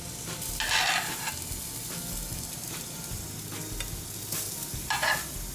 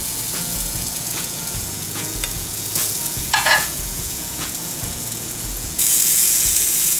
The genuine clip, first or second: first